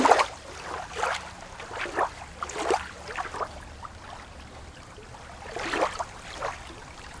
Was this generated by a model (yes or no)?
no